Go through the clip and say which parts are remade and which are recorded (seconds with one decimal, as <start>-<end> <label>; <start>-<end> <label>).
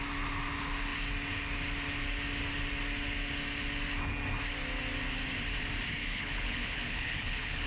0.0-6.0 recorded; 6.0-7.7 remade